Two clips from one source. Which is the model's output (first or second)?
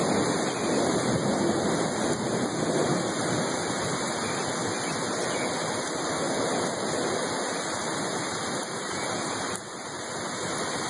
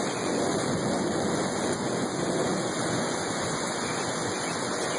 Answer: second